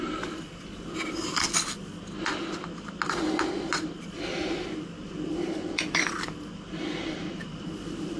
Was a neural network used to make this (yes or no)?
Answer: no